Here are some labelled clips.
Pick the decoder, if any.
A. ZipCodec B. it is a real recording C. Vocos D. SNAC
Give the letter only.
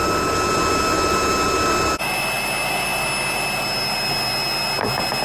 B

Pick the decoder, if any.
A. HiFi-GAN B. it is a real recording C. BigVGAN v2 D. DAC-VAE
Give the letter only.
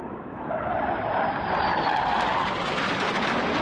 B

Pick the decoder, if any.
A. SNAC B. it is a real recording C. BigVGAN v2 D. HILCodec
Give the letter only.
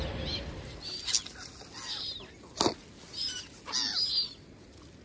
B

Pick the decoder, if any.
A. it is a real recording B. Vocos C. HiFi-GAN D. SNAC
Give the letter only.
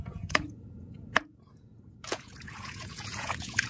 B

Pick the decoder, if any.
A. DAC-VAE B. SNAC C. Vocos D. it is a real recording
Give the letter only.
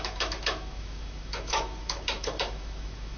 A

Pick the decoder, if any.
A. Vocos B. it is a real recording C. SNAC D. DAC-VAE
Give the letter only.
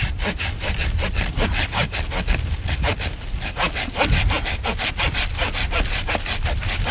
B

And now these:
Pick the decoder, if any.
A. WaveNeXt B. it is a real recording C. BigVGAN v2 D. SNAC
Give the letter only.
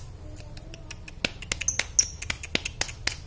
B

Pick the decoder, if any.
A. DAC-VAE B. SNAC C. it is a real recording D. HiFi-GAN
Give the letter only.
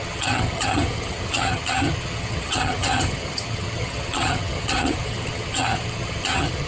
D